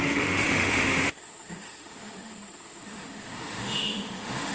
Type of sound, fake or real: fake